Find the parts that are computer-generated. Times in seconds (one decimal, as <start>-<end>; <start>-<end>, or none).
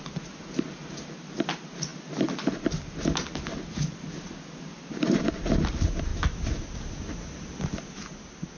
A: none